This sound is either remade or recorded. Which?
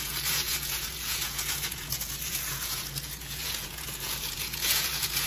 remade